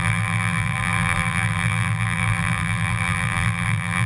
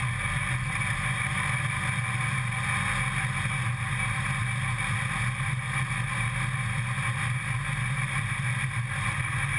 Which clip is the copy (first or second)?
first